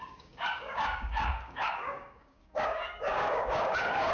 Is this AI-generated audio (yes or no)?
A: yes